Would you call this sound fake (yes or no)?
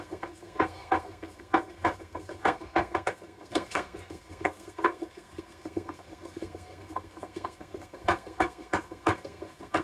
yes